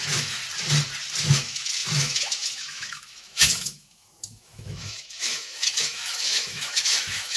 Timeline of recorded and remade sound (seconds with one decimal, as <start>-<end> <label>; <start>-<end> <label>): 0.0-0.4 remade; 0.4-1.2 recorded; 1.2-7.4 remade